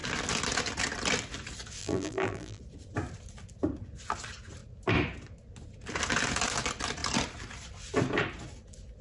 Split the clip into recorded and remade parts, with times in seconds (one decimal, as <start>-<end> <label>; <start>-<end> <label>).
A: 0.0-1.8 recorded; 1.8-2.6 remade; 2.6-9.0 recorded

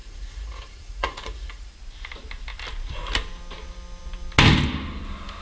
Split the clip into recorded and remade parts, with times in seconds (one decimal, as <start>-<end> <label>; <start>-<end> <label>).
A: 0.0-1.7 remade; 1.7-5.4 recorded

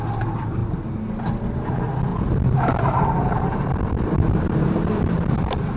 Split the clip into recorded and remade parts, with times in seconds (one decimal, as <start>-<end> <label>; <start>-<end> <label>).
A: 0.0-2.1 recorded; 2.1-5.8 remade